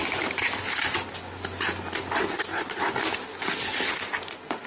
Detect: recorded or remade recorded